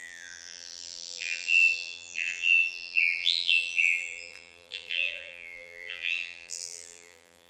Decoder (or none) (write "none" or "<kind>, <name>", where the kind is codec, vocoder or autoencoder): vocoder, BigVGAN v2